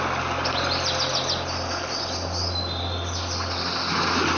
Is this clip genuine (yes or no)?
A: yes